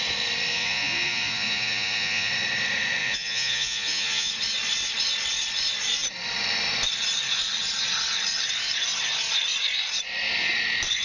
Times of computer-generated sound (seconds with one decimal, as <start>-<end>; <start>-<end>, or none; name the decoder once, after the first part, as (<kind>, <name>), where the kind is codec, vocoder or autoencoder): 0.5-2.3 (vocoder, Vocos); 3.0-4.3